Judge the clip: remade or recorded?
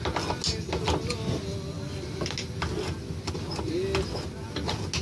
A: recorded